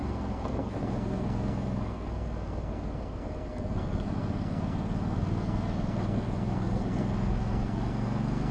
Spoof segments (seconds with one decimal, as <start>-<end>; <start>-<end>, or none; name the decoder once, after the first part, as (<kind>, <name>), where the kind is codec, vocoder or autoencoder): 0.0-8.5 (codec, SNAC)